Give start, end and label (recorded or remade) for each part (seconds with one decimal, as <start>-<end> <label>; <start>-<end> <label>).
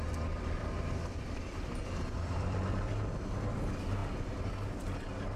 0.0-3.2 remade; 3.2-5.4 recorded